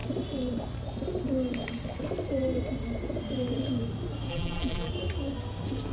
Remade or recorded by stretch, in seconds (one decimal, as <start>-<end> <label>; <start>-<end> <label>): 0.0-4.3 recorded; 4.3-4.9 remade; 4.9-5.9 recorded